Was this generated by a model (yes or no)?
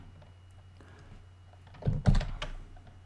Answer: no